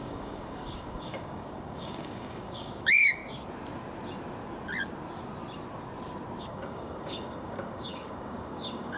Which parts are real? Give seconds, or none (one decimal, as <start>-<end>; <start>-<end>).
3.2-6.4